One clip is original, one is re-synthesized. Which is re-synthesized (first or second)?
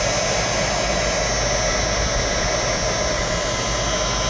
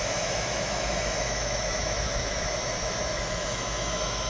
second